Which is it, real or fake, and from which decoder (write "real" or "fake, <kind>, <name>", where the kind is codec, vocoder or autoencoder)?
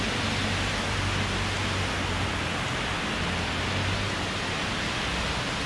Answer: real